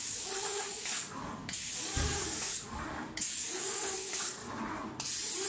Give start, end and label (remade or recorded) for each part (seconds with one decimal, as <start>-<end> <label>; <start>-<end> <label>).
0.0-4.4 remade; 4.4-5.5 recorded